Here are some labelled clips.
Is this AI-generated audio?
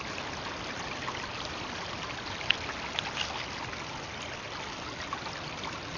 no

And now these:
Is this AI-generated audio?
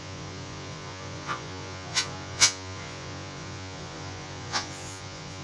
yes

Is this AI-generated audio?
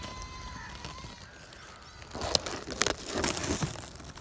no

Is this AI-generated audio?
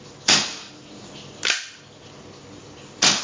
no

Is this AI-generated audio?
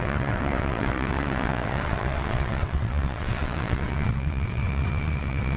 yes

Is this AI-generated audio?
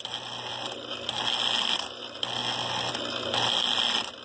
no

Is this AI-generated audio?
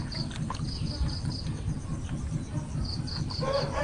yes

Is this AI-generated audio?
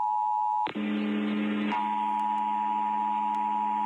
no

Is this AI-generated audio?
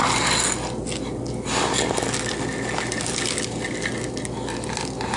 no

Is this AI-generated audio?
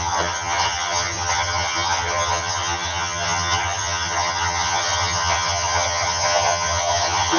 yes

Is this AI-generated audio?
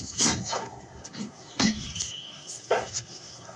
yes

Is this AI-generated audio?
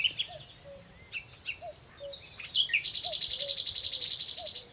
no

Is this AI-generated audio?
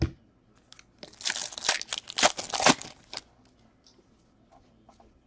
no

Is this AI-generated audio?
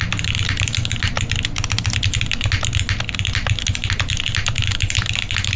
no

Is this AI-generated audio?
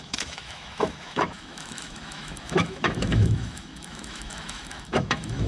yes